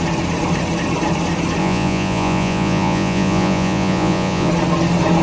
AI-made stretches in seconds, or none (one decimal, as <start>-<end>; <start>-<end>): 1.6-4.5